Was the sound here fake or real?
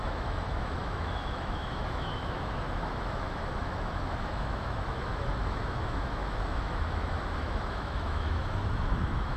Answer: fake